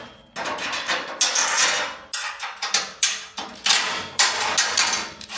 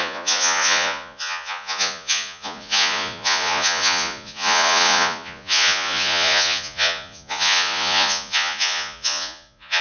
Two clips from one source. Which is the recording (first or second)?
first